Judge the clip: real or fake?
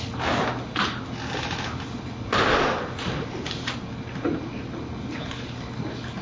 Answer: real